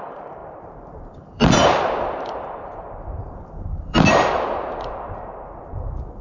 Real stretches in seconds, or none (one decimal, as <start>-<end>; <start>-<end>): none